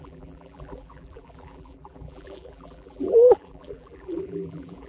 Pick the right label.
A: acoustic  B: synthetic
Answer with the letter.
B